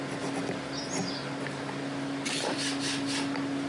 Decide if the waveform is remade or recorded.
recorded